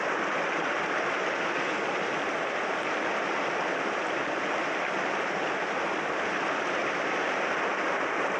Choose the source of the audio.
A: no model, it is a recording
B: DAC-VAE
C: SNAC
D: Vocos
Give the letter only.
A